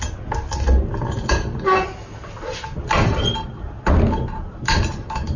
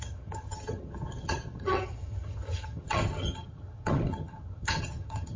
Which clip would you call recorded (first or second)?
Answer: first